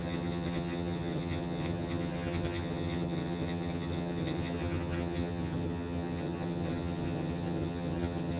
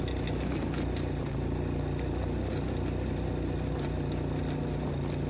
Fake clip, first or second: first